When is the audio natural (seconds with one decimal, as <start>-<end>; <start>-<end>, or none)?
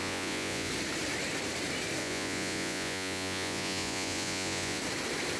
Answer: 0.7-2.0; 4.8-5.4